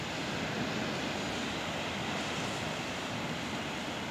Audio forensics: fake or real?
real